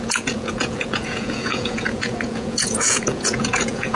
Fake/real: fake